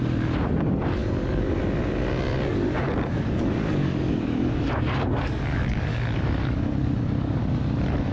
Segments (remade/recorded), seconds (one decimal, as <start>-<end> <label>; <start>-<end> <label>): 0.0-1.0 recorded; 1.0-1.6 remade; 1.6-2.5 recorded; 2.5-7.4 remade; 7.4-8.1 recorded